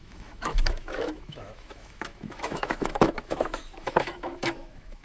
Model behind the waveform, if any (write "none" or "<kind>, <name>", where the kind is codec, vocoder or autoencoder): autoencoder, DAC-VAE